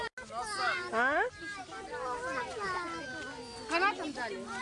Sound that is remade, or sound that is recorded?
recorded